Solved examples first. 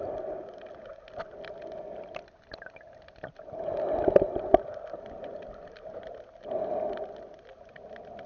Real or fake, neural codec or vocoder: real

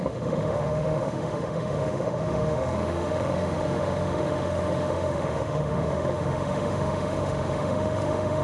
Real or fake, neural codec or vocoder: fake, autoencoder, DAC-VAE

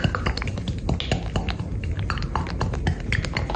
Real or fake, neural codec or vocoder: real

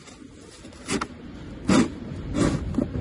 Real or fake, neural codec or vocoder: real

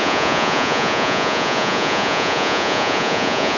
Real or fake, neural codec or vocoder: fake, vocoder, Vocos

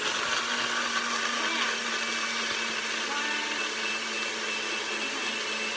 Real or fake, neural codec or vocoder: real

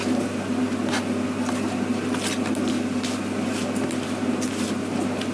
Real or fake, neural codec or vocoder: real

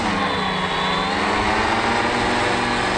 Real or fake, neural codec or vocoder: real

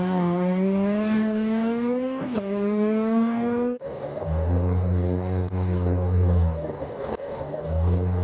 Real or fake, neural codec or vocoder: fake, codec, DAC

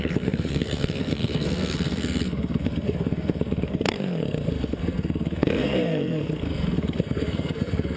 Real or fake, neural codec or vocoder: fake, codec, SNAC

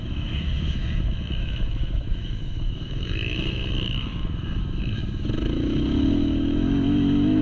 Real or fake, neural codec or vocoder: fake, autoencoder, DAC-VAE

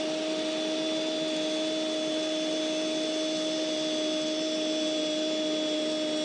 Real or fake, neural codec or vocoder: real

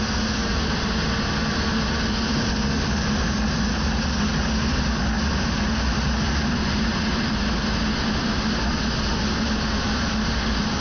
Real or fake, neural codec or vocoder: real